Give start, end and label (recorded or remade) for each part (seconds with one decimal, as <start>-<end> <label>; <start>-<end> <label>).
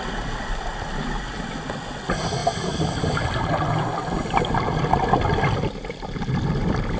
0.0-7.0 recorded